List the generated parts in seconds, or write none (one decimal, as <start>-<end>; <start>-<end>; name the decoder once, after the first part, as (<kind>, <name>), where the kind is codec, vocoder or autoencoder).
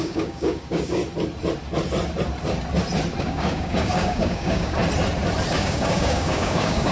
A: 0.0-1.0 (codec, DAC); 3.2-4.8; 5.5-6.9